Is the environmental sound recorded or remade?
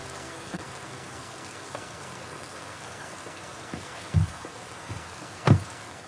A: remade